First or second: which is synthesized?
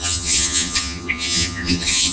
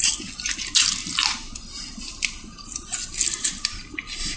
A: first